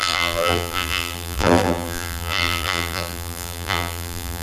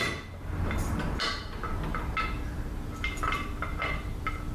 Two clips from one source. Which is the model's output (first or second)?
first